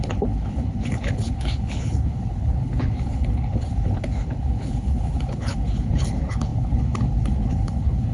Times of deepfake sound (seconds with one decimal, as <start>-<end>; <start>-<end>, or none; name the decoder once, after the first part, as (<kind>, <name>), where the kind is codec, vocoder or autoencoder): 0.0-8.1 (codec, HILCodec)